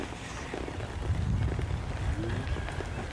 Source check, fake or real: real